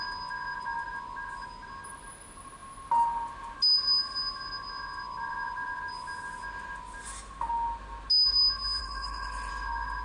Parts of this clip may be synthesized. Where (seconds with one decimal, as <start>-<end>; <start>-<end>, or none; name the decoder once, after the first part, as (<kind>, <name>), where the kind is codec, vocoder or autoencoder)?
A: 8.8-9.5 (autoencoder, DAC-VAE)